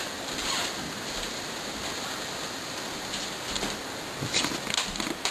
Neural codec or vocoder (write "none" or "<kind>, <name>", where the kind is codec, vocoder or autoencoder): none